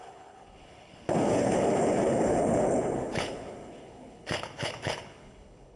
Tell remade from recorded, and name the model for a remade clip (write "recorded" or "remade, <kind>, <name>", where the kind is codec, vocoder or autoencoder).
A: remade, codec, HILCodec